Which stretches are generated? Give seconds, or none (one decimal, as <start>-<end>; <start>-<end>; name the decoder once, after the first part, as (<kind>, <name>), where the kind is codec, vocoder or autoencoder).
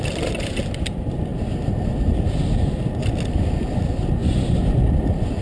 4.2-4.9 (vocoder, Vocos)